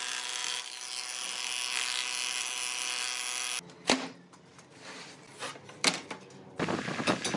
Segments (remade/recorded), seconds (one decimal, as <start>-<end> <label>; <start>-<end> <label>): 0.0-4.5 recorded; 4.5-5.9 remade; 5.9-7.4 recorded